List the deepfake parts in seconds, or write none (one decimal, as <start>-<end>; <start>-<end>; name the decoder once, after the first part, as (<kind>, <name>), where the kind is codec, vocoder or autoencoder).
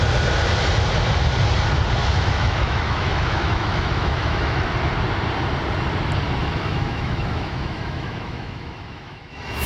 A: 2.0-4.7 (autoencoder, DAC-VAE); 6.4-9.7